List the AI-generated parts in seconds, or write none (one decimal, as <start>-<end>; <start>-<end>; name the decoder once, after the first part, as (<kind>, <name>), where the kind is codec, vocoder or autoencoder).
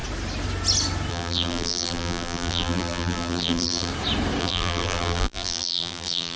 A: 1.1-3.9 (vocoder, BigVGAN v2); 4.4-6.4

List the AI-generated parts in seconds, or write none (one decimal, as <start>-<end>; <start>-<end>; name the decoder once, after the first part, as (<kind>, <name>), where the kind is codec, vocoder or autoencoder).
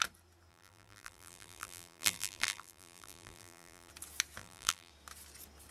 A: 0.5-3.9 (vocoder, BigVGAN v2); 4.4-4.9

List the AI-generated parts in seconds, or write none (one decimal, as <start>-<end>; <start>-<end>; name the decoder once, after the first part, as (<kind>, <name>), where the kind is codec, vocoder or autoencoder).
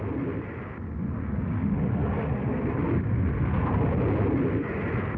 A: none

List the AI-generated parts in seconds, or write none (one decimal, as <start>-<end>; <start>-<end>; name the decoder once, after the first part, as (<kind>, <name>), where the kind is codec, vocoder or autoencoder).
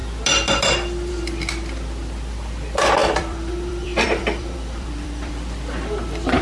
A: 3.0-5.3 (vocoder, BigVGAN v2)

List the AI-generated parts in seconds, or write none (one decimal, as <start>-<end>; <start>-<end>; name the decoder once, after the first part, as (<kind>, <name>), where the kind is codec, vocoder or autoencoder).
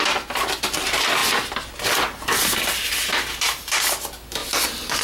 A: none